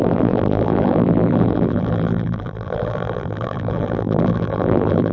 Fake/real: fake